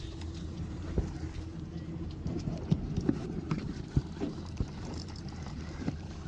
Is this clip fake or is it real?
fake